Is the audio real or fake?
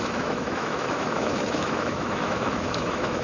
fake